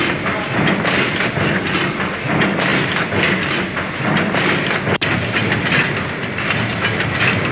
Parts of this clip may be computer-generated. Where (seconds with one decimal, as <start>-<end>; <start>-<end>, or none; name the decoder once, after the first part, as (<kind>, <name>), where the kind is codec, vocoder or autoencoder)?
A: none